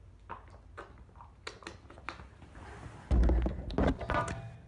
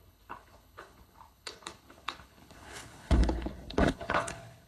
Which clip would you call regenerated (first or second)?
second